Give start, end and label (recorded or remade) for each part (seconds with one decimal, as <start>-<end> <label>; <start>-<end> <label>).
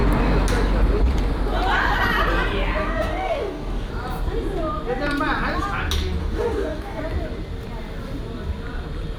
0.0-2.8 recorded; 2.8-3.9 remade; 3.9-6.2 recorded; 6.2-7.0 remade; 7.0-9.2 recorded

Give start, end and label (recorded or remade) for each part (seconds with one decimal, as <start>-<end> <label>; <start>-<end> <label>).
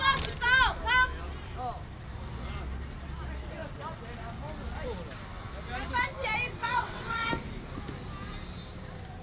0.0-6.6 recorded; 6.6-7.3 remade; 7.3-9.2 recorded